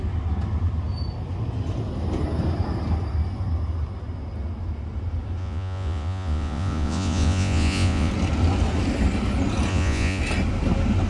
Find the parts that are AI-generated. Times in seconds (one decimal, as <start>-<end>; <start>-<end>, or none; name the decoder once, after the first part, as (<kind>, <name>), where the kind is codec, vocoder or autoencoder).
5.4-8.1 (vocoder, Vocos); 9.7-10.2